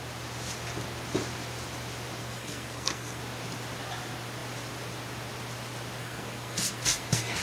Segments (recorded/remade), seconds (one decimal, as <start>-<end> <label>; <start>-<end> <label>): 0.0-2.2 recorded; 2.2-3.2 remade; 3.2-6.0 recorded; 6.0-7.4 remade